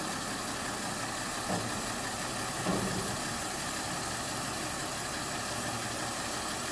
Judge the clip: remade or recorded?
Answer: recorded